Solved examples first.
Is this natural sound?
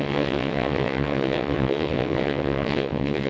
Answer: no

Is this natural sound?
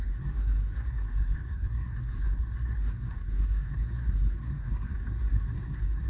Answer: no